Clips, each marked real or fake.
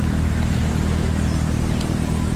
real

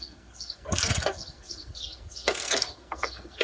fake